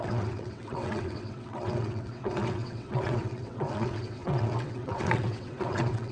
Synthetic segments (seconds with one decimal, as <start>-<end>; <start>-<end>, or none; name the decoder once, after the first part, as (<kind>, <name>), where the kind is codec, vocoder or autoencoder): 0.0-6.1 (vocoder, WaveNeXt)